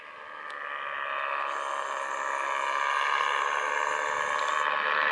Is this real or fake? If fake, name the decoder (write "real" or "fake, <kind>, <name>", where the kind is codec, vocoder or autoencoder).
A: real